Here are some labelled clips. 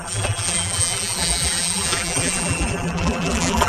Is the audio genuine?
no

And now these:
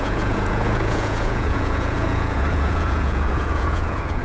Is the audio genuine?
no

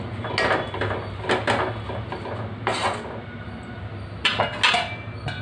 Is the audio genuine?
yes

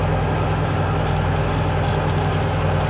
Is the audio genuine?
yes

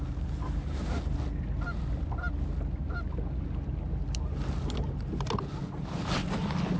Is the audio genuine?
yes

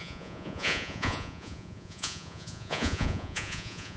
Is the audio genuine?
no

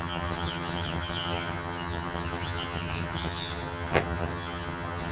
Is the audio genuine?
no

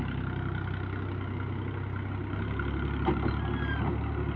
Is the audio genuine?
yes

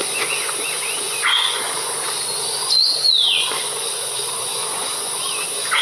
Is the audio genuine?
no